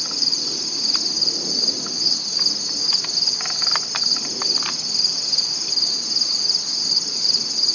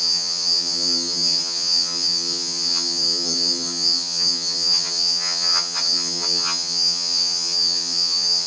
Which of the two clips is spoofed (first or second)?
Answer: second